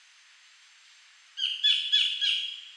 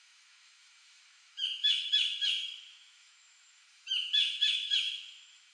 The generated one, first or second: second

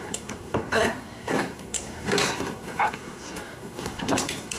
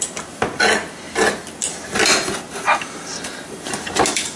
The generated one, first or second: first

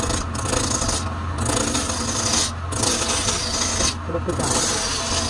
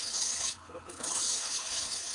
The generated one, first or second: second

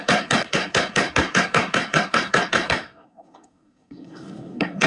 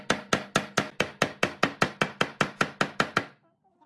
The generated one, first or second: first